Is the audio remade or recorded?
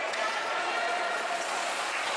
remade